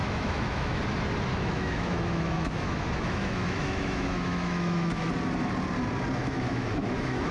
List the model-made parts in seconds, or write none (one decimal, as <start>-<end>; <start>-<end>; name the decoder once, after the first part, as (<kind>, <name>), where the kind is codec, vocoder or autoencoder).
0.0-0.8 (autoencoder, DAC-VAE); 1.3-5.1; 6.2-7.3